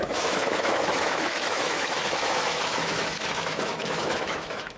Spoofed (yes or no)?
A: yes